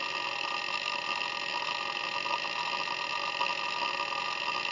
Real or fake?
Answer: real